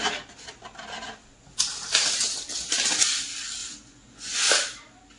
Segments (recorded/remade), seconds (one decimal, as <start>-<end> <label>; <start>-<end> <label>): 0.0-3.6 recorded; 3.6-4.4 remade; 4.4-5.2 recorded